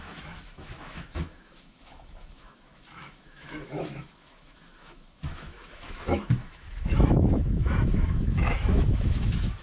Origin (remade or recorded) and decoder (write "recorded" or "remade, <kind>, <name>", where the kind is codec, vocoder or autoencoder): remade, autoencoder, DAC-VAE